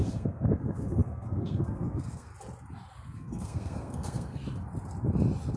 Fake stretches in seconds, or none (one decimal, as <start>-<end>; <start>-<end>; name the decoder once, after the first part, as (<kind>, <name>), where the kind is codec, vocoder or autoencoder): 0.0-2.3 (codec, SNAC); 2.9-4.4